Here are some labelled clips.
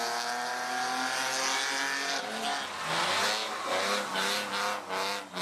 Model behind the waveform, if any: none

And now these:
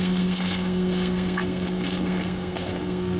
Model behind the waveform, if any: codec, SNAC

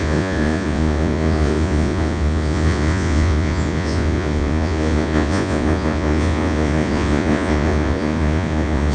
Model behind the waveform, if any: vocoder, Vocos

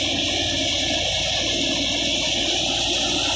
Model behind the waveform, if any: none